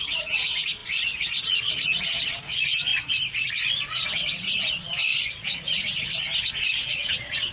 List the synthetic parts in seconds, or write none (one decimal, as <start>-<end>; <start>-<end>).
0.0-2.9; 3.5-7.5